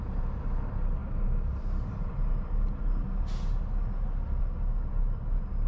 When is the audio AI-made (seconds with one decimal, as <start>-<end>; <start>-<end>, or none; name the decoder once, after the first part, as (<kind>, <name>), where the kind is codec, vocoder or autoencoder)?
none